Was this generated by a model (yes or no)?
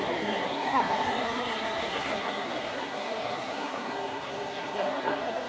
yes